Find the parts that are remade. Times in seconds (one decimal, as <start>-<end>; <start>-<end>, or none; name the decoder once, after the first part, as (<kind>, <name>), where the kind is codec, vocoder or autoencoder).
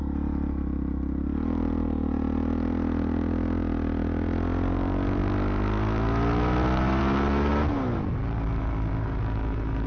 none